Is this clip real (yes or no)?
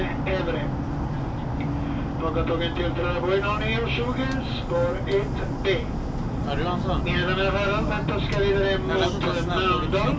yes